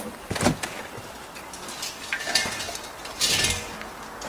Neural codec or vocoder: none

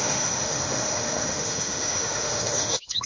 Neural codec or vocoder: autoencoder, DAC-VAE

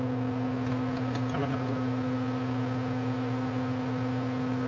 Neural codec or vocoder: none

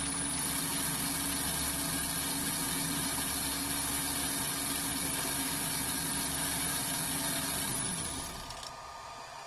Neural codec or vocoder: none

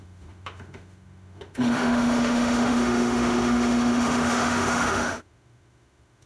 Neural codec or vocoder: autoencoder, DAC-VAE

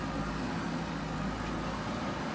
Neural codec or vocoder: none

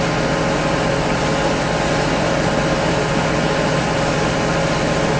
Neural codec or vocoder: none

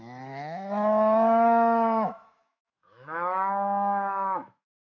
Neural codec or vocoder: autoencoder, DAC-VAE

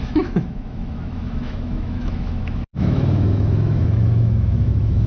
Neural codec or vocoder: autoencoder, DAC-VAE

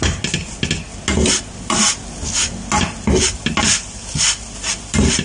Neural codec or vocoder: none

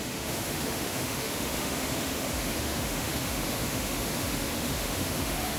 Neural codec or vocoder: autoencoder, DAC-VAE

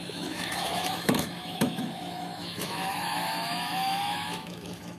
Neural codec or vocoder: autoencoder, DAC-VAE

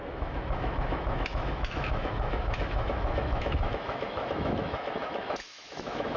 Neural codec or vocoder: autoencoder, DAC-VAE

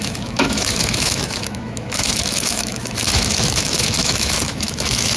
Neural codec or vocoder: autoencoder, DAC-VAE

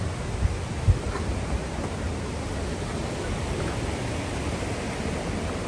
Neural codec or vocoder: none